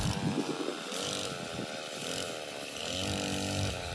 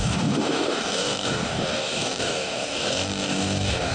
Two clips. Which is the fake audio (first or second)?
second